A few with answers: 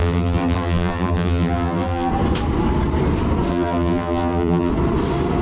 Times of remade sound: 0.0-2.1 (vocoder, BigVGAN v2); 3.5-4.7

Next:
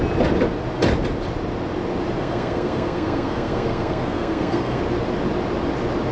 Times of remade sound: 2.2-4.8 (codec, SNAC)

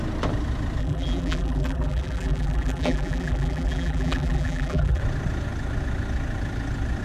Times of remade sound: 0.8-5.0 (vocoder, BigVGAN v2)

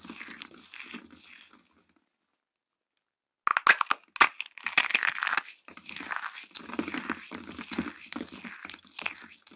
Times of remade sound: none

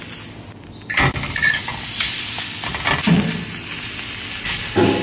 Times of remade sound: none

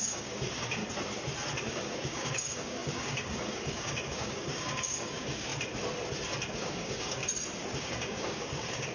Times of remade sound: 0.0-0.8 (codec, DAC); 1.6-5.5; 6.5-7.2; 7.8-8.9

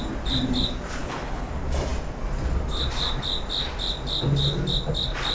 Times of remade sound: 1.0-1.5 (codec, HILCodec)